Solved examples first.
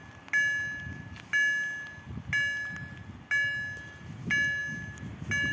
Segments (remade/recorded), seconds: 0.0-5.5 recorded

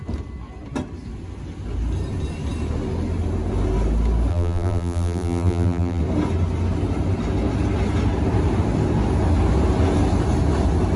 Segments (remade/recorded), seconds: 0.0-4.3 recorded; 4.3-6.0 remade; 6.0-11.0 recorded

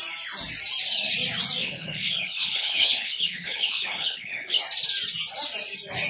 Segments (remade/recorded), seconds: 0.0-1.6 recorded; 1.6-4.6 remade; 4.6-6.1 recorded

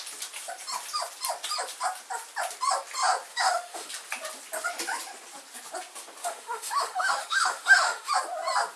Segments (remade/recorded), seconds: 0.0-3.3 recorded; 3.3-3.9 remade; 3.9-6.2 recorded; 6.2-8.1 remade; 8.1-8.8 recorded

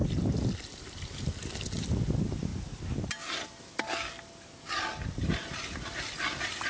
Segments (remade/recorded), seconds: 0.0-6.7 recorded

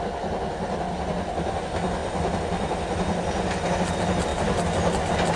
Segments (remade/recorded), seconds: 0.0-5.4 recorded

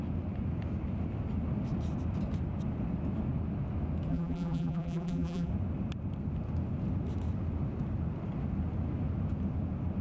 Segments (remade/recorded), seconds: 0.0-4.1 recorded; 4.1-5.5 remade; 5.5-10.0 recorded